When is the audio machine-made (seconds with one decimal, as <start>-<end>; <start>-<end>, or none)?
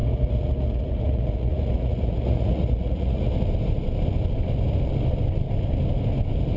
0.0-3.3